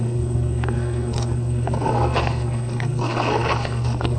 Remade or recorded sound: remade